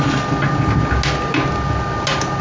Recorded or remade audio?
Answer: recorded